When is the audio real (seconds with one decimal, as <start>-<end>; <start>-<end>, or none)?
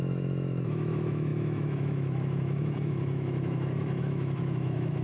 none